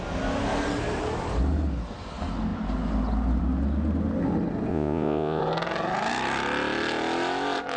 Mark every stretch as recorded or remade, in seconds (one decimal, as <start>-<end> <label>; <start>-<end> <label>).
0.0-4.7 recorded; 4.7-5.4 remade; 5.4-7.8 recorded